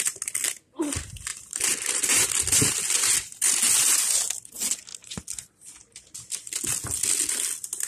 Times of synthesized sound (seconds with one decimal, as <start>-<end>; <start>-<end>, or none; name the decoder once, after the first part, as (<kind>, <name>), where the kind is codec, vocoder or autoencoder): 1.3-2.3 (vocoder, BigVGAN v2)